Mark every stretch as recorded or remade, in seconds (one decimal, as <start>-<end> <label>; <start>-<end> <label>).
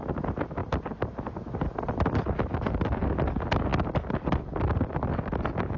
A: 0.0-5.8 recorded